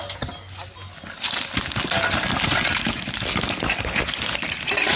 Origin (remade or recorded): recorded